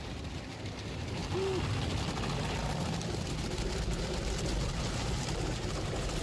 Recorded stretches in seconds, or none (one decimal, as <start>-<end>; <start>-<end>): 1.2-4.9